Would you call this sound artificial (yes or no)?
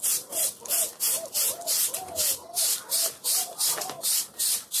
yes